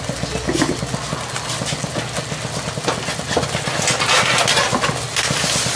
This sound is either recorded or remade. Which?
recorded